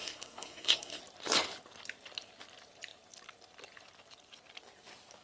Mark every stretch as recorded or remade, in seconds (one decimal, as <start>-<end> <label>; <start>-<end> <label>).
0.0-1.0 remade; 1.0-5.2 recorded